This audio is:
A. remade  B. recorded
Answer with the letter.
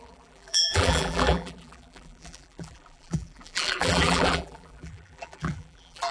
A